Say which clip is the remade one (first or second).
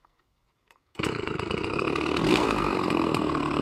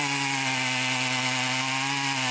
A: first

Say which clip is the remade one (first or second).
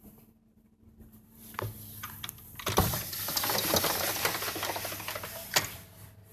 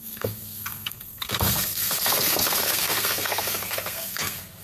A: second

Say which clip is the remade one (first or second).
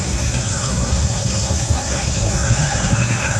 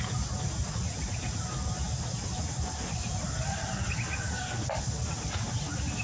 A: first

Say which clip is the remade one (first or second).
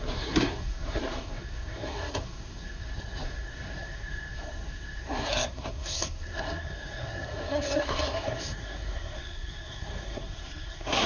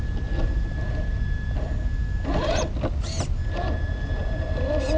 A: first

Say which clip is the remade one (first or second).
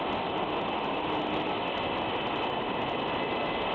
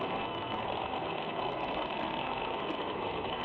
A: second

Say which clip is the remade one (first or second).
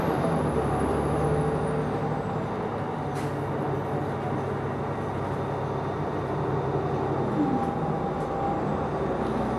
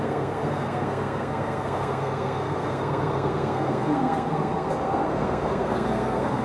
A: second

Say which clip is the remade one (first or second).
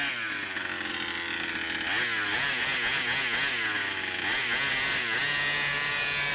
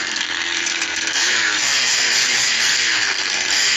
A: second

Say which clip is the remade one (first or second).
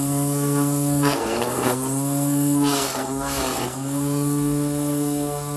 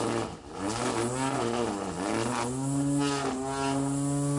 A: first